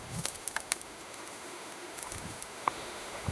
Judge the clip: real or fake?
fake